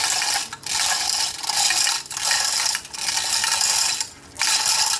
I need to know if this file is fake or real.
real